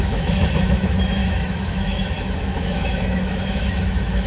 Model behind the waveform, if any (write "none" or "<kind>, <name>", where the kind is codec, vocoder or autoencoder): autoencoder, DAC-VAE